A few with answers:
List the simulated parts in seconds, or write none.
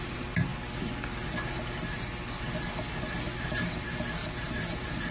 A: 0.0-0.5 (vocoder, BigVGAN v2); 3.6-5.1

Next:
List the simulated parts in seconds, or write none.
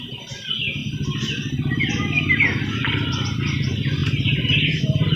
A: none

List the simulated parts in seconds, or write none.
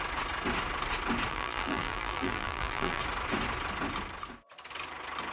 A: 1.3-3.0 (vocoder, BigVGAN v2)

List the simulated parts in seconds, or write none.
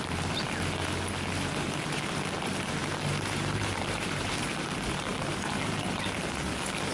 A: 2.8-4.4 (vocoder, BigVGAN v2)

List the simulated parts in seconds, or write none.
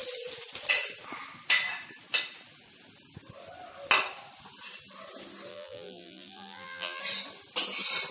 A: 5.5-7.0 (vocoder, BigVGAN v2)